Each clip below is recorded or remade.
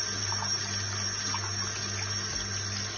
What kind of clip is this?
recorded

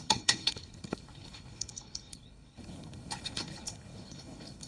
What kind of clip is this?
remade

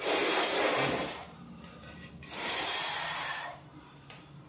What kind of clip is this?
remade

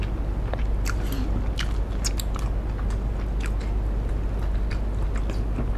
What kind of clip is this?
recorded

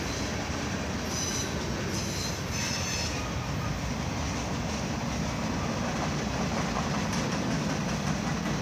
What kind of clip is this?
recorded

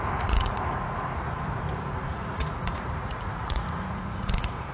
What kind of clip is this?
remade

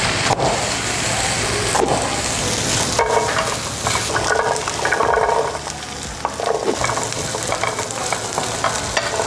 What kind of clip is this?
recorded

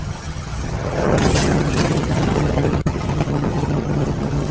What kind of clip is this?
remade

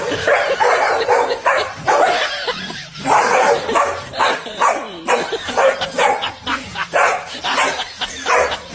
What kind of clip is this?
remade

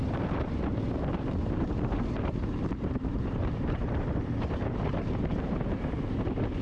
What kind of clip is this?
remade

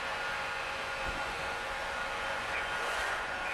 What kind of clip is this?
remade